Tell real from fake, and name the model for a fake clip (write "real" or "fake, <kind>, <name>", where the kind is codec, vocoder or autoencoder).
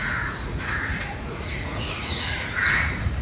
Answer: fake, vocoder, Vocos